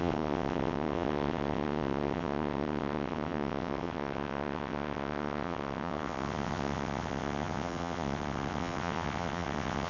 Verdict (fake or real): fake